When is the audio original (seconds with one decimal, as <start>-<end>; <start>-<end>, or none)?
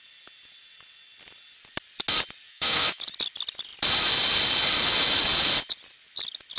0.0-2.5; 3.0-6.6